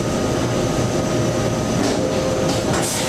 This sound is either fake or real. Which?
real